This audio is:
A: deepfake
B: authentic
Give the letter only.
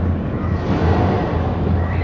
B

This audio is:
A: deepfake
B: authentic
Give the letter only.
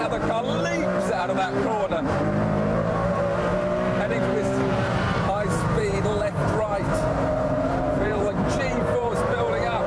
A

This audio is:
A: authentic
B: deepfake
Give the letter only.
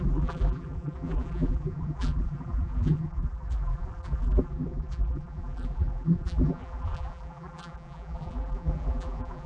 B